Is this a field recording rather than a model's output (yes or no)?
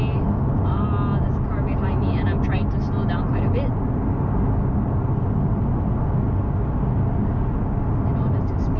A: yes